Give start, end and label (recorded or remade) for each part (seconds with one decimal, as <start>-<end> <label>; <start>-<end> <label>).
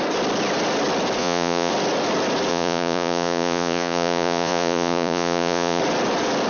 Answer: 0.0-1.2 recorded; 1.2-1.7 remade; 1.7-2.5 recorded; 2.5-5.8 remade; 5.8-6.5 recorded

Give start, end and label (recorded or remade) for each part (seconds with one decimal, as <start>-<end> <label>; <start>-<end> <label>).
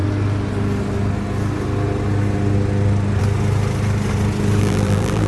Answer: 0.0-4.6 recorded; 4.6-5.3 remade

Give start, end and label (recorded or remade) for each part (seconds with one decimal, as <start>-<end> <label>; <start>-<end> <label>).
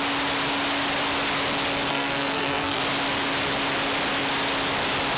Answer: 0.0-1.9 recorded; 1.9-2.8 remade; 2.8-5.2 recorded